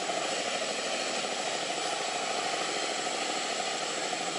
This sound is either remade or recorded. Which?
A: recorded